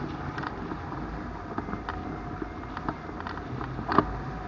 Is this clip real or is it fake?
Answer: real